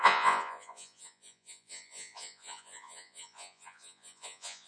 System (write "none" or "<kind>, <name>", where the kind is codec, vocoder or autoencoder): vocoder, Vocos